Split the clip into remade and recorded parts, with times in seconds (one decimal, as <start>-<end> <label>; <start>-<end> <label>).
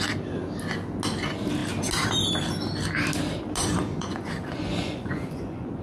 0.0-3.6 recorded; 3.6-5.8 remade